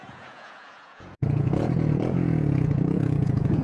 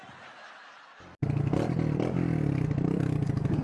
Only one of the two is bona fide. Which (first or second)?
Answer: second